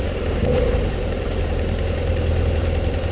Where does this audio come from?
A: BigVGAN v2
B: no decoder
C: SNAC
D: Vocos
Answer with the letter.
A